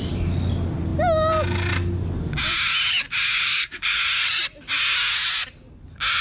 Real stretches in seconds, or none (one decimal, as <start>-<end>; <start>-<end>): 0.0-3.4; 4.0-6.2